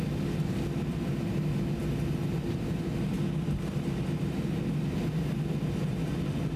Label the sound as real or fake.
real